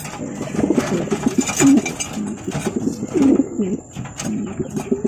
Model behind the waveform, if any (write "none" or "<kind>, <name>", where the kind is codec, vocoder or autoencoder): none